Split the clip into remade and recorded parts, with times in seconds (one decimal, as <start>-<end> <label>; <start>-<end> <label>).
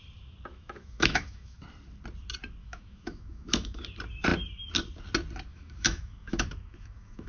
0.0-0.5 recorded; 0.5-1.6 remade; 1.6-2.6 recorded; 2.6-3.8 remade; 3.8-5.5 recorded; 5.5-7.3 remade